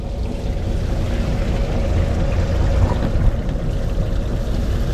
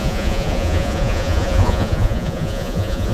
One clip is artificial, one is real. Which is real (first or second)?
first